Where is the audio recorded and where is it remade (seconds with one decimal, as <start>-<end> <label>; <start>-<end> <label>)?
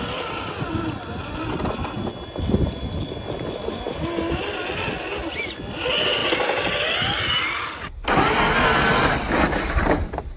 0.0-10.4 recorded